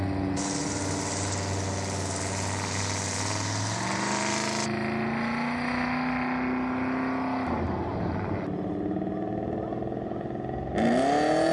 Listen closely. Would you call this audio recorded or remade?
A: recorded